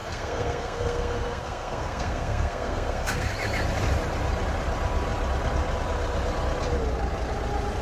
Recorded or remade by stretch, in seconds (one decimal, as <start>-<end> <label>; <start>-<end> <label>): 0.0-3.3 remade; 3.3-7.8 recorded